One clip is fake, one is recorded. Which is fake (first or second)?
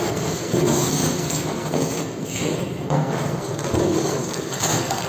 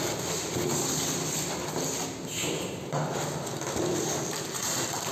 first